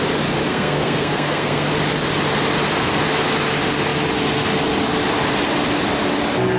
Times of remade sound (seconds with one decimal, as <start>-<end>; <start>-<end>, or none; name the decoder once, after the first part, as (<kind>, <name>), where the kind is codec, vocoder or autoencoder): 0.5-1.7 (codec, SNAC)